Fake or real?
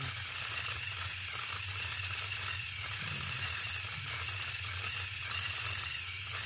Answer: real